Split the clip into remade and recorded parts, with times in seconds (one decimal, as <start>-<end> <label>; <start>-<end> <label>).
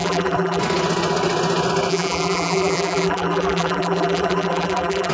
0.0-0.6 remade; 0.6-1.9 recorded; 1.9-5.1 remade